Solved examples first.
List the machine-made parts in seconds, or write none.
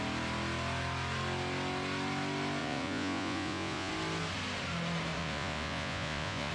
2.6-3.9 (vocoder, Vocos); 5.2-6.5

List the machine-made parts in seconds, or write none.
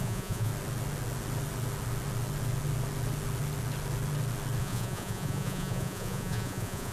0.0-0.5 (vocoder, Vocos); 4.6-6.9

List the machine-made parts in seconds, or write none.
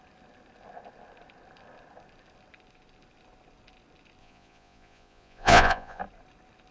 4.2-6.0 (vocoder, Vocos)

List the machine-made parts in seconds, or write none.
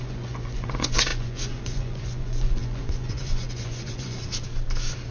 0.0-4.2 (vocoder, Vocos)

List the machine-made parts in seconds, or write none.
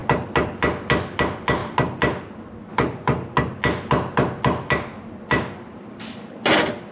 none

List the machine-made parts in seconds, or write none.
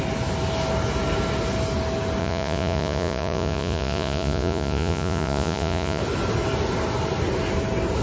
2.2-6.0 (vocoder, Vocos)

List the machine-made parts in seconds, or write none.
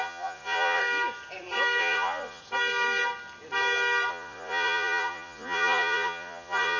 0.0-0.8 (vocoder, Vocos); 1.8-2.4; 4.1-6.8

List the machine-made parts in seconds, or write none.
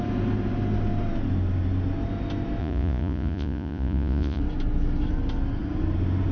2.6-4.4 (vocoder, Vocos)